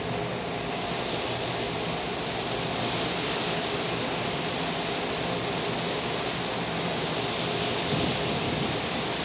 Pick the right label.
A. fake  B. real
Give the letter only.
B